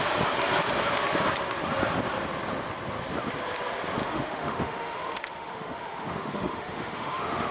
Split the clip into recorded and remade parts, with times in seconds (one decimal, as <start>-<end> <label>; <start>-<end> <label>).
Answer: 0.0-4.0 recorded; 4.0-7.5 remade